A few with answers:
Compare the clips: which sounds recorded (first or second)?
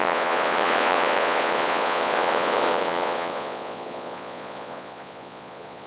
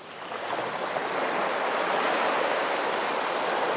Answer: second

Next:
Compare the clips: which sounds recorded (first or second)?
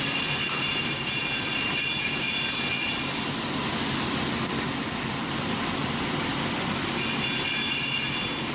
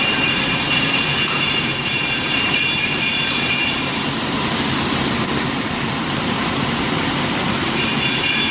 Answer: first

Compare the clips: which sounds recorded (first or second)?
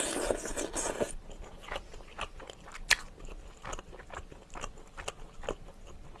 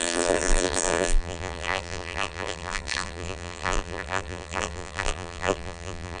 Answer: first